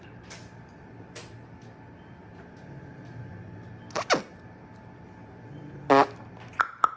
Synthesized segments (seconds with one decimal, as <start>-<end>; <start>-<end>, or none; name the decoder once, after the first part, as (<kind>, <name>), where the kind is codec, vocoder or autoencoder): 2.2-3.3 (vocoder, BigVGAN v2)